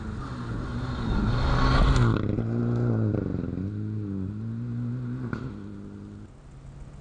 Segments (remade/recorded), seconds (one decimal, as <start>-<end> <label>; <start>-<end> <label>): 0.0-7.0 recorded

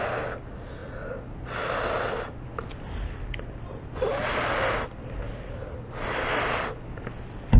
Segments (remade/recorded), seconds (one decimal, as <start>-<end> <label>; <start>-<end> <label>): 0.0-7.6 recorded

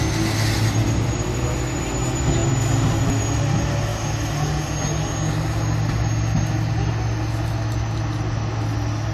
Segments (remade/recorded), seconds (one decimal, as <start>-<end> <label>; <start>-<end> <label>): 0.0-9.1 recorded

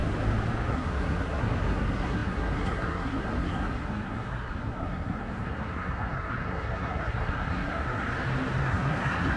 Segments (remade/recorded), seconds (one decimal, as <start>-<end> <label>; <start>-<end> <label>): 0.0-0.7 recorded; 0.7-8.1 remade; 8.1-8.6 recorded; 8.6-9.4 remade

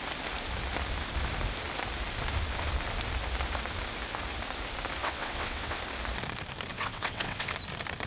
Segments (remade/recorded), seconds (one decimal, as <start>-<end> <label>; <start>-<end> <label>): 0.0-5.0 recorded; 5.0-5.8 remade; 5.8-6.7 recorded; 6.7-7.5 remade; 7.5-8.1 recorded

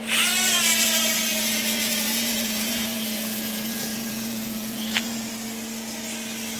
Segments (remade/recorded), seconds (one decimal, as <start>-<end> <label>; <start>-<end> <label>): 0.0-1.3 recorded; 1.3-5.3 remade; 5.3-6.6 recorded